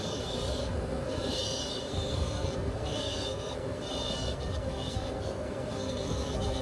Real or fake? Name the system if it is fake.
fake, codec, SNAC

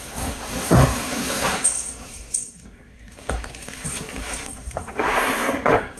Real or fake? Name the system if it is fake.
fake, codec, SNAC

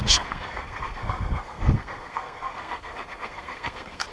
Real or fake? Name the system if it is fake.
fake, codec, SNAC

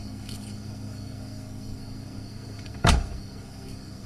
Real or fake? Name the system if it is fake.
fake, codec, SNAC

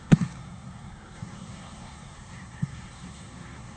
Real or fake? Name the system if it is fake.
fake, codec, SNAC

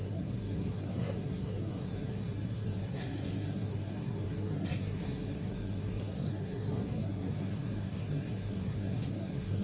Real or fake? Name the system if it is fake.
fake, codec, SNAC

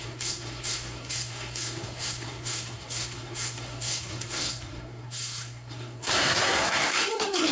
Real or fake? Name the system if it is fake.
fake, codec, SNAC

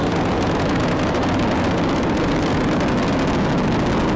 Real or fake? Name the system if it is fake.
real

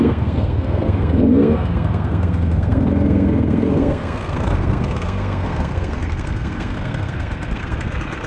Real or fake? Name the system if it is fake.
fake, codec, SNAC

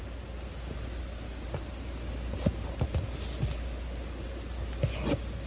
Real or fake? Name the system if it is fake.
real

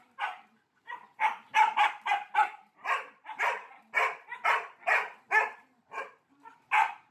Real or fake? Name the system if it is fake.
real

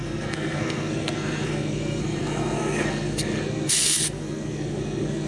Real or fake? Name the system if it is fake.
fake, codec, SNAC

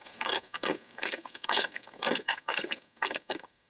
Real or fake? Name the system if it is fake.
fake, codec, SNAC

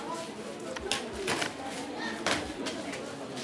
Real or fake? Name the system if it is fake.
real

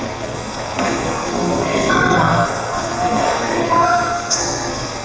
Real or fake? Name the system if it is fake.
fake, codec, SNAC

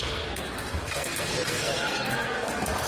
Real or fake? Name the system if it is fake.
fake, codec, SNAC